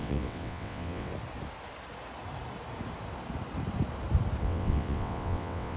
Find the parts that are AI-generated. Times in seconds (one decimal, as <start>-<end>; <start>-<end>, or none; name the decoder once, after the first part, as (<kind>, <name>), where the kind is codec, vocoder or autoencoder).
0.0-1.1 (vocoder, WaveNeXt); 4.4-5.8

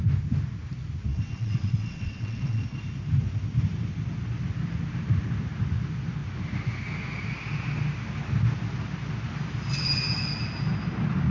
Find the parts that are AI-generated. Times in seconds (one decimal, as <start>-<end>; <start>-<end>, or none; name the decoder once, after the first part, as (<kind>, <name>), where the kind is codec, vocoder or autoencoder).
1.1-2.6 (vocoder, WaveNeXt)

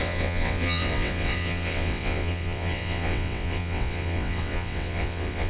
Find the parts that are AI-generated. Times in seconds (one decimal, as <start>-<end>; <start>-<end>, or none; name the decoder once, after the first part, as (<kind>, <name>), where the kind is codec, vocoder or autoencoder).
0.0-5.5 (vocoder, WaveNeXt)